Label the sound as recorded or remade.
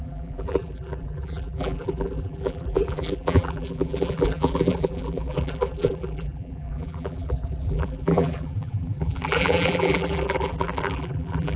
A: remade